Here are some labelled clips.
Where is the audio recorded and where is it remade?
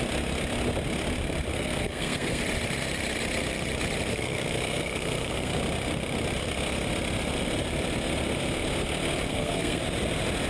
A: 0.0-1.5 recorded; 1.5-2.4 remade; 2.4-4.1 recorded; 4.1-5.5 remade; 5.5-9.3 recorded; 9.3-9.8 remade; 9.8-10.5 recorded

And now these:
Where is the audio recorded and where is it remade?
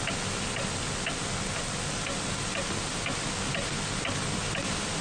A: 0.0-4.4 recorded; 4.4-5.0 remade